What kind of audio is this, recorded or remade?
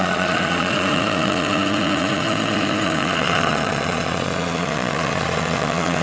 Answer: remade